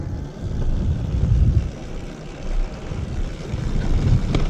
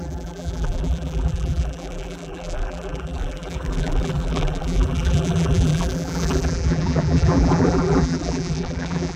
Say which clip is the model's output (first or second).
second